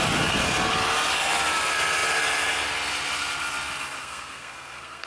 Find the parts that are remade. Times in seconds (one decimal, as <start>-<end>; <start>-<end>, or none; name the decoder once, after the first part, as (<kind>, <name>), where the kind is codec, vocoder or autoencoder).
4.0-5.1 (codec, SNAC)